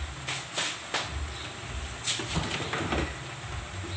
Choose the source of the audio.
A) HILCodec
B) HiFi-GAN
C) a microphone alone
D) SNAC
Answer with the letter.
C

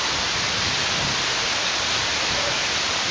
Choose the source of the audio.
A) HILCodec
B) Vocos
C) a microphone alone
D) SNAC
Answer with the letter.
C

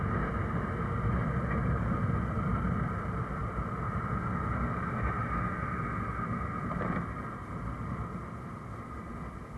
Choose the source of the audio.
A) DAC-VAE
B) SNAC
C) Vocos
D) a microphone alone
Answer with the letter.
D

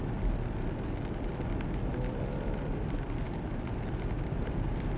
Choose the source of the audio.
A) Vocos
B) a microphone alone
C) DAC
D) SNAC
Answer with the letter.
B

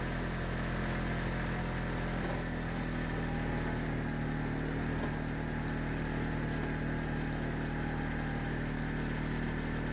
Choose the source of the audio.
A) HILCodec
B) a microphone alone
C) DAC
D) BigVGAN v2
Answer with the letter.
B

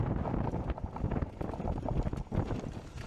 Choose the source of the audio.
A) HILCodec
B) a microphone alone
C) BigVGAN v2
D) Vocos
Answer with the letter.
B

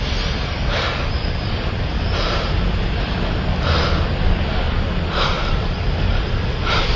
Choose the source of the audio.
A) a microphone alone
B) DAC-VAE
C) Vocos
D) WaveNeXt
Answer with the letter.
A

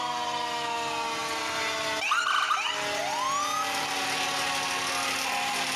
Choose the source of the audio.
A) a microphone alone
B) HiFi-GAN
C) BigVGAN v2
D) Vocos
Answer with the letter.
A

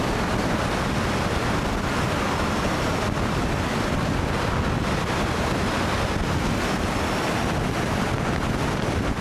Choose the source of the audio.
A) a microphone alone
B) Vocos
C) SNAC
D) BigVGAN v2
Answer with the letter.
A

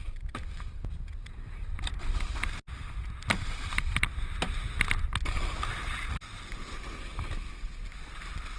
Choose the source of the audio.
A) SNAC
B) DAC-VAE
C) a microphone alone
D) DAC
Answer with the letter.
C